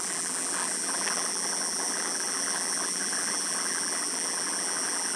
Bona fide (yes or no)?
no